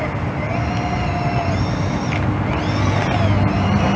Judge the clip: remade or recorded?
recorded